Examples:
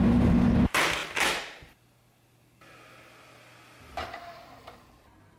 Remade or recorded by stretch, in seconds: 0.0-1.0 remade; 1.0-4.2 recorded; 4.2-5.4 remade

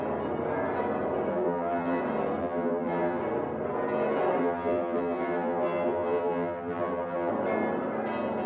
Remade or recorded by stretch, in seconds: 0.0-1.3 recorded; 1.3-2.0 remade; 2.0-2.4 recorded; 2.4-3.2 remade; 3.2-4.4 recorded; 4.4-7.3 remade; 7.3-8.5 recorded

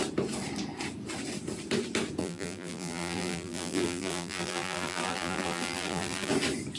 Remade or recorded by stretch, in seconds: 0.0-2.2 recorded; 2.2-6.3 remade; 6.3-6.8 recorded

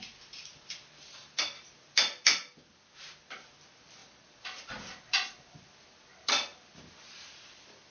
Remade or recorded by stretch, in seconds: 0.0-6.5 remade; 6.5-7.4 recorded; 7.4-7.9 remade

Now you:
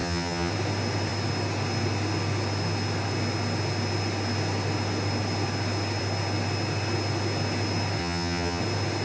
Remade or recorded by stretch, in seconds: 0.0-0.5 remade; 0.5-8.0 recorded; 8.0-8.6 remade; 8.6-9.0 recorded

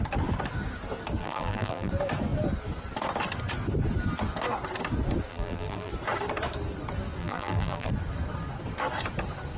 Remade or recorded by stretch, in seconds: 0.0-1.2 recorded; 1.2-1.9 remade; 1.9-5.3 recorded; 5.3-5.9 remade; 5.9-7.2 recorded; 7.2-7.9 remade; 7.9-9.6 recorded

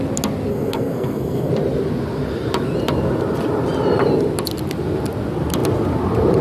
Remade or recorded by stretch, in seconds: 0.0-0.5 recorded; 0.5-1.5 remade; 1.5-6.4 recorded